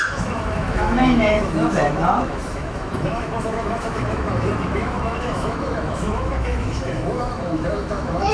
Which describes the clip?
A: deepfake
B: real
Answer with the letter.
A